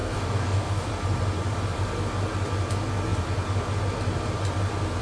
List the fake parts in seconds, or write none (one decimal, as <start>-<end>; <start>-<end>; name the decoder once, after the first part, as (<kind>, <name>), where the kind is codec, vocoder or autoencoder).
0.0-0.9 (codec, DAC)